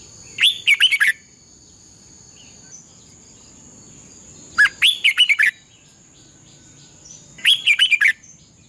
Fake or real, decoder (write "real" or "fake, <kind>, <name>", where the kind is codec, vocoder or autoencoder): real